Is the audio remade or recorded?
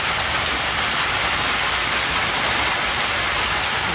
recorded